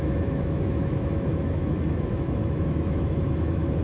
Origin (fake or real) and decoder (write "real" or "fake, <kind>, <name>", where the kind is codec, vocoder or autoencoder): fake, autoencoder, DAC-VAE